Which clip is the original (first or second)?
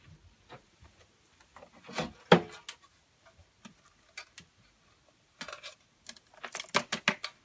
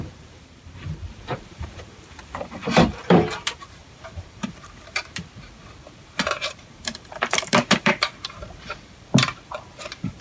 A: first